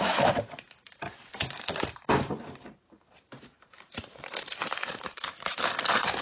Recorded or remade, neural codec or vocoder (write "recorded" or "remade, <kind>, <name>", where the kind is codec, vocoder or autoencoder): remade, vocoder, BigVGAN v2